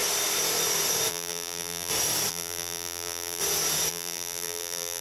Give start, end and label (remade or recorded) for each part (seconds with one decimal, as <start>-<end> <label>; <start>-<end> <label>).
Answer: 0.0-1.1 recorded; 1.1-1.9 remade; 1.9-2.3 recorded; 2.3-3.4 remade; 3.4-3.9 recorded; 3.9-5.0 remade